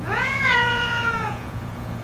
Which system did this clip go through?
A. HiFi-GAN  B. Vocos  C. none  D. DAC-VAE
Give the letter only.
B